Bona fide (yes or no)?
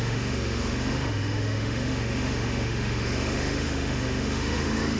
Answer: no